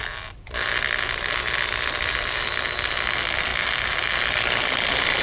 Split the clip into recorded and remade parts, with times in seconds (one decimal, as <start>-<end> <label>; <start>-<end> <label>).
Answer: 0.0-5.2 recorded